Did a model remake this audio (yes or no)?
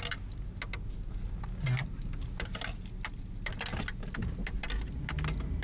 no